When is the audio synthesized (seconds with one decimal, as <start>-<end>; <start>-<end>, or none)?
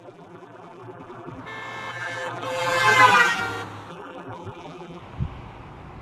0.0-1.4; 1.9-3.4; 3.9-5.0